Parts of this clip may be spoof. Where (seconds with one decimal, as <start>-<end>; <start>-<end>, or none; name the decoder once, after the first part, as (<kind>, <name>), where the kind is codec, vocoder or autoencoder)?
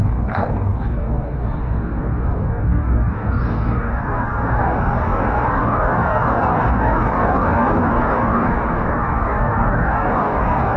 0.0-10.8 (codec, DAC)